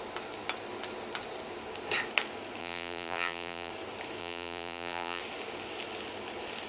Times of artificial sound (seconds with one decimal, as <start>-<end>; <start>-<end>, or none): 2.6-3.7; 4.2-5.2